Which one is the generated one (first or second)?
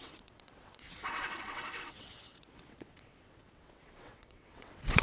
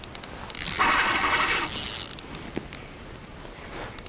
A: first